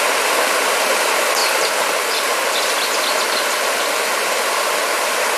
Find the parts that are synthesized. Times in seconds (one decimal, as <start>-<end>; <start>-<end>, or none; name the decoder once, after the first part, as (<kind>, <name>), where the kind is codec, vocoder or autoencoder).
1.4-2.6 (vocoder, BigVGAN v2)

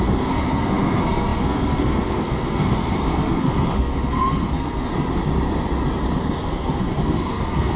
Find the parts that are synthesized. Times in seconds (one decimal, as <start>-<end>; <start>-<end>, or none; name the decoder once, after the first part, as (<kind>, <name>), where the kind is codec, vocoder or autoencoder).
0.0-4.9 (codec, SNAC); 6.2-7.8

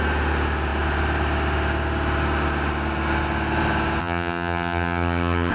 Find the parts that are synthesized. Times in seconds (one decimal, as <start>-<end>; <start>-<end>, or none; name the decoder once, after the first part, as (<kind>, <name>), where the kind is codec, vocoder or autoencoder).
4.0-5.5 (vocoder, HiFi-GAN)

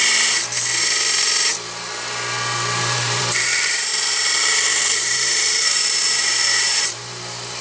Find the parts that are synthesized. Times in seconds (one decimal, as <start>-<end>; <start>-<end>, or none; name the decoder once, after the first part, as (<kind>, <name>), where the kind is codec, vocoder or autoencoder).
2.8-3.9 (vocoder, BigVGAN v2); 4.7-7.6

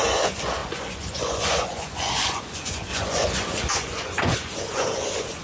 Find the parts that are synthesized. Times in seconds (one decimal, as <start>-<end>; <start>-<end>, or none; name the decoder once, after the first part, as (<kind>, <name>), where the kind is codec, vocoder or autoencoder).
0.0-5.4 (vocoder, Vocos)

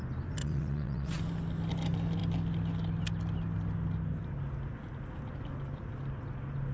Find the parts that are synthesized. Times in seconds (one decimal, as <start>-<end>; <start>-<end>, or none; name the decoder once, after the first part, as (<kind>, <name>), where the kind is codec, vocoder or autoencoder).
0.4-1.2 (vocoder, WaveNeXt)